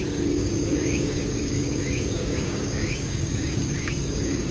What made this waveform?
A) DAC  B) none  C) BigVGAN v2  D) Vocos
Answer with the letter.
A